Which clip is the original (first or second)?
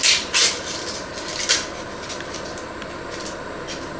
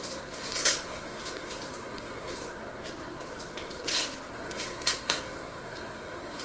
first